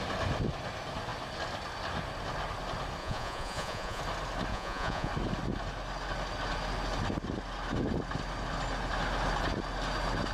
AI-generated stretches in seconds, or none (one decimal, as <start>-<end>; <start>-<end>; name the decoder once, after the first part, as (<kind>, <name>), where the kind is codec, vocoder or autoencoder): 3.0-4.0 (vocoder, Vocos); 4.5-5.1